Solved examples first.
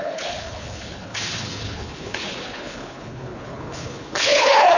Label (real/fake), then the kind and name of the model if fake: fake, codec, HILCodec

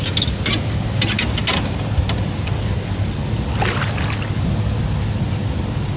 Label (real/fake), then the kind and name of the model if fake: real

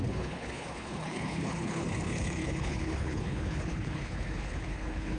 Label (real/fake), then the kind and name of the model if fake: fake, codec, HILCodec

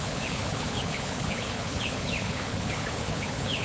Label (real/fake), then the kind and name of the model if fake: fake, codec, HILCodec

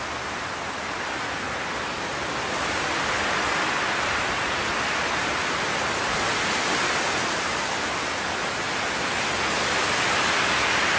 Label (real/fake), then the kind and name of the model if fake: real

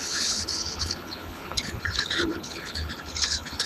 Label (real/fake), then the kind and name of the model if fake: fake, codec, HILCodec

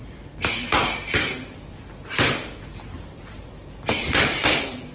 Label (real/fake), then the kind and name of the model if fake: real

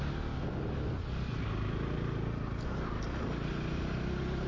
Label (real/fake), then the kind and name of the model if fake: real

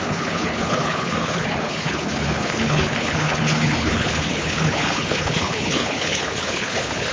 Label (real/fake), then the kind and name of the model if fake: fake, codec, HILCodec